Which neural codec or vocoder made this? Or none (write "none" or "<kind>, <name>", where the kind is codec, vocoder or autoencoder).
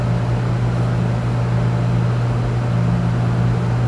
none